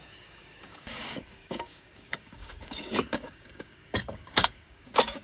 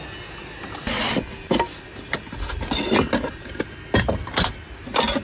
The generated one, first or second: first